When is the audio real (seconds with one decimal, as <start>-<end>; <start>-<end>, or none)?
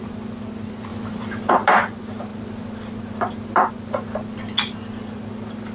0.0-5.7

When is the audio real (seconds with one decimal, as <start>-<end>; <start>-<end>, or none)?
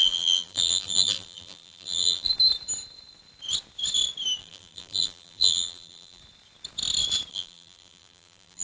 2.3-4.4; 6.2-7.3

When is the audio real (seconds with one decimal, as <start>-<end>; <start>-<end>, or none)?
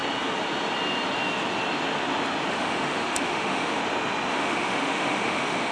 0.0-2.5; 3.8-4.3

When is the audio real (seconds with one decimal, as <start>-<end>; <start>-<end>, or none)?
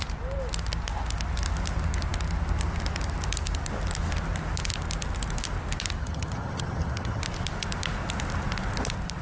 0.0-6.0; 7.2-9.2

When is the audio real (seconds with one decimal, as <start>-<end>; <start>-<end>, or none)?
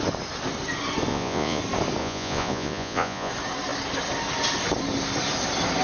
0.0-1.1; 1.6-2.0; 3.3-5.8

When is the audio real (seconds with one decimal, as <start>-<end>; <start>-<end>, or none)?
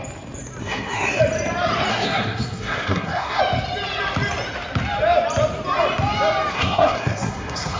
0.0-0.6; 1.2-1.9; 3.4-6.5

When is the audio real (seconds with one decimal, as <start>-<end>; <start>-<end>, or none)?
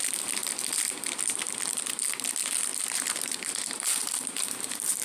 0.0-2.7